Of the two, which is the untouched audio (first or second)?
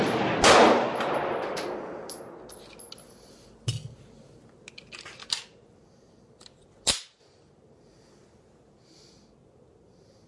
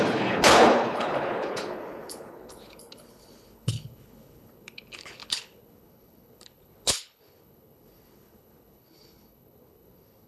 first